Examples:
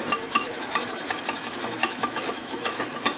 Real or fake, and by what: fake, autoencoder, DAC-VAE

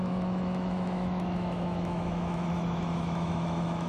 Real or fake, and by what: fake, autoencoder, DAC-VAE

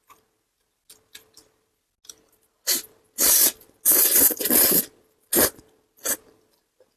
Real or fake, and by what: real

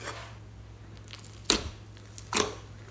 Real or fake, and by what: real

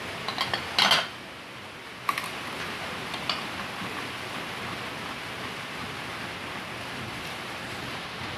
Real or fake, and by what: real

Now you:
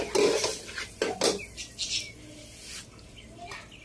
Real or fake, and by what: real